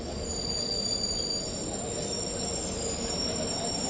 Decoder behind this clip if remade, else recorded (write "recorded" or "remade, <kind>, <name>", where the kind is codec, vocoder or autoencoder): recorded